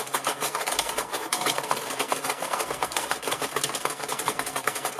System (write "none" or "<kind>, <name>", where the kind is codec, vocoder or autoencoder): codec, SNAC